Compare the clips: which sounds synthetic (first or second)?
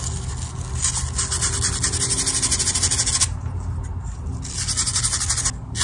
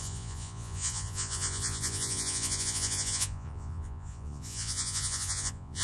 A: second